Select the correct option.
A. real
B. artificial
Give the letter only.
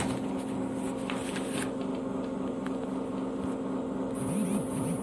A